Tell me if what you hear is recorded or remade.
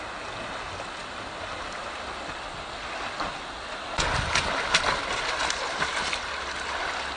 recorded